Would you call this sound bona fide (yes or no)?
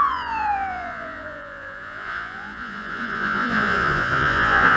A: no